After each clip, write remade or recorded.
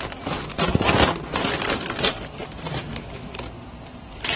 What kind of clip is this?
remade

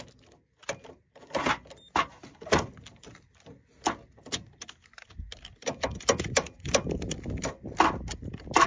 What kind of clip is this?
recorded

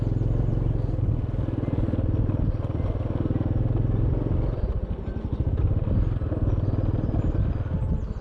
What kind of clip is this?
recorded